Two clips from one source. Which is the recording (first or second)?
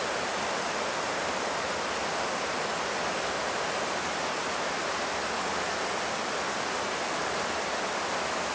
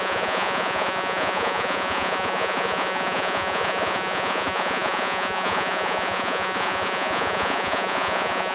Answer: first